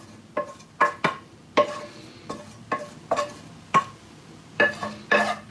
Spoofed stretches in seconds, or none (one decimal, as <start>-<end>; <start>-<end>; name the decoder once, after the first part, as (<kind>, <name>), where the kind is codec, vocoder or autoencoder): none